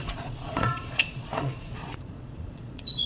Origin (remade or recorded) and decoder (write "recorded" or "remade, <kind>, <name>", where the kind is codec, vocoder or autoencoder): remade, vocoder, Vocos